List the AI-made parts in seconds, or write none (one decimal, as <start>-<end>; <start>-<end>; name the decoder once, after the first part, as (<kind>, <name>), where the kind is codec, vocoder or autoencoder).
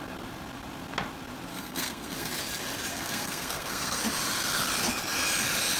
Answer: 1.5-2.3 (codec, SNAC); 2.9-4.0